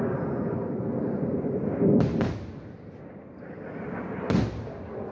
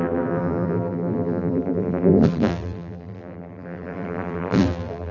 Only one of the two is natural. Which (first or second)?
first